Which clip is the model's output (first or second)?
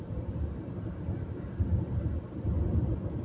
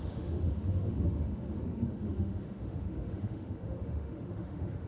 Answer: second